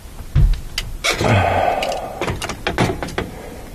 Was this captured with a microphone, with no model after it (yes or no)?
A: yes